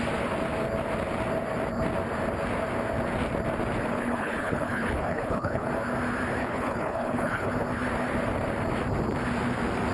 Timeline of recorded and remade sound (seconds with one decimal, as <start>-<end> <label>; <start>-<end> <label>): 0.0-3.9 recorded; 3.9-5.7 remade; 5.7-6.4 recorded; 6.4-7.5 remade; 7.5-9.9 recorded